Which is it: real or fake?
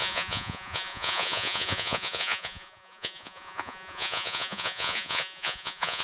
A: fake